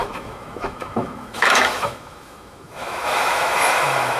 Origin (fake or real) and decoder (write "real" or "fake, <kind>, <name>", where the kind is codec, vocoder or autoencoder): fake, autoencoder, DAC-VAE